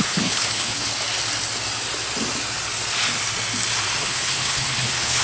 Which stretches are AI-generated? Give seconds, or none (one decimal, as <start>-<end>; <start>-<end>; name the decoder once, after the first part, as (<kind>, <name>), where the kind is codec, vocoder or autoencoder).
0.0-0.9 (codec, HILCodec); 4.0-5.2